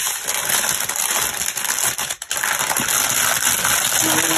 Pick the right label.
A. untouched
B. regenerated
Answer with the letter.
A